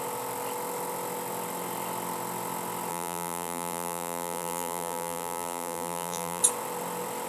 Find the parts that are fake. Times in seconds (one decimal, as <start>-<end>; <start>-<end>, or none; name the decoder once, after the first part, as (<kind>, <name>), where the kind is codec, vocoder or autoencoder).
2.9-6.4 (vocoder, BigVGAN v2)